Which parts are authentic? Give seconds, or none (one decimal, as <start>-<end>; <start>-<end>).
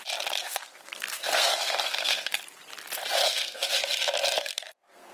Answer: 0.0-0.4; 2.4-3.2; 3.7-4.4